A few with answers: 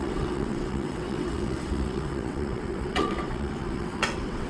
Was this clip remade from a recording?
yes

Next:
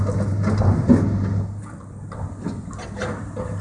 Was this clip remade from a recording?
no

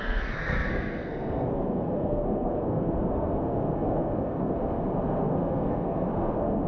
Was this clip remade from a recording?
yes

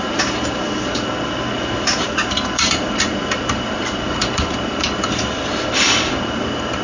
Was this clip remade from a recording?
yes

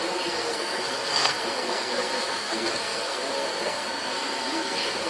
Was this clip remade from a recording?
yes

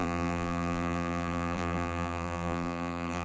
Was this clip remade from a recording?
yes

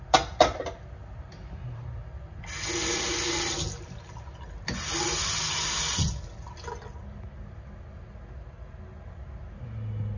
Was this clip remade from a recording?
no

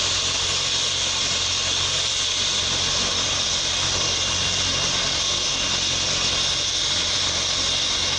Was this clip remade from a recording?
yes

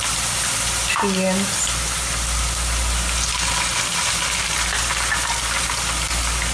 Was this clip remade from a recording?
no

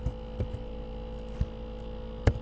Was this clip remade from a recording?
no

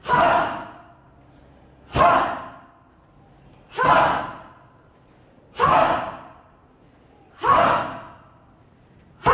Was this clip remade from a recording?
no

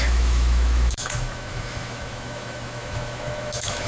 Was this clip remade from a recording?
yes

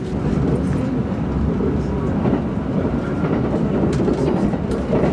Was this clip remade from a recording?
no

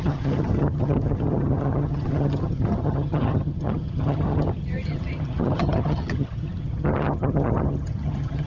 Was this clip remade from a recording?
yes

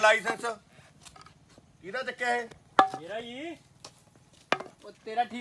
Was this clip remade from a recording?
no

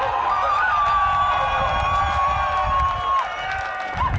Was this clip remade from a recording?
no